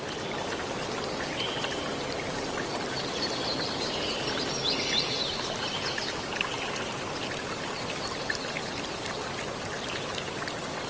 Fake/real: real